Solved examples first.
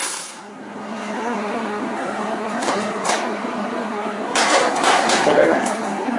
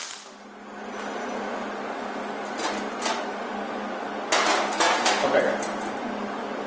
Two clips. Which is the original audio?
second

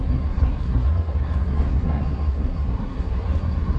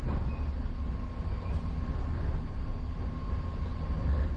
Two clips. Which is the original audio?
second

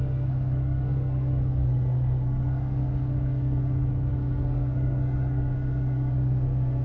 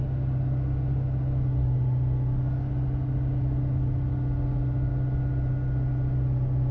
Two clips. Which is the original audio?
second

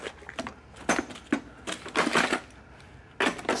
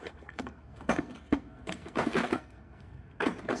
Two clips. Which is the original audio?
first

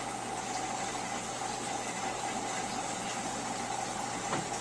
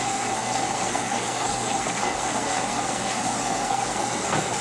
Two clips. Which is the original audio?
first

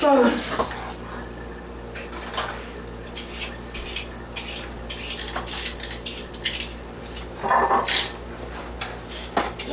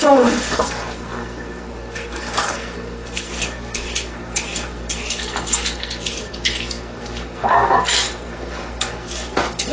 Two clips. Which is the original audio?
first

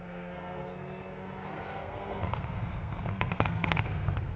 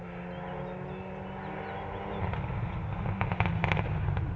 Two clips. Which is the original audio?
second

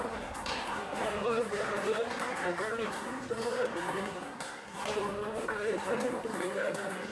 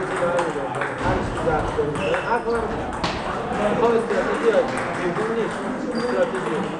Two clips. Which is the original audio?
second